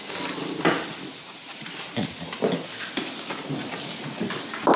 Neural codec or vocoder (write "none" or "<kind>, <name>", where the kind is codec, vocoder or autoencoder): none